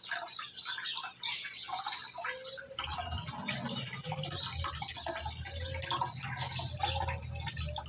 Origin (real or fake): real